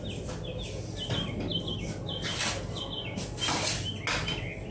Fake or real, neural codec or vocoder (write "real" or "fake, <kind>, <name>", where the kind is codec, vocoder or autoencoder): real